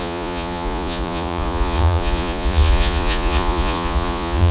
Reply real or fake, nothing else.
fake